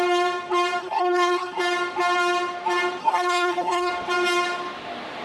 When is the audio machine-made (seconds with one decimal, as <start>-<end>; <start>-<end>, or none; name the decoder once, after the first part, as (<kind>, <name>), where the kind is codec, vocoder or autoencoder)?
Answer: 0.8-1.6 (codec, SNAC); 3.0-3.9